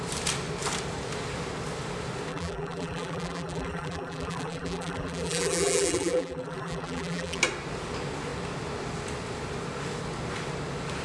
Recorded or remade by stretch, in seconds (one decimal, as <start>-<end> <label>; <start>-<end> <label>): 0.0-2.3 recorded; 2.3-7.4 remade; 7.4-11.0 recorded